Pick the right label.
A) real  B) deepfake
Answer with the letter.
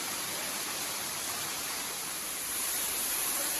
B